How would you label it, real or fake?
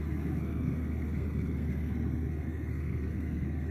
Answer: fake